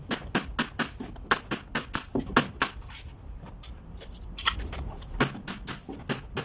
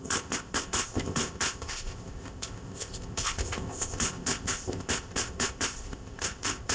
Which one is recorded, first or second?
first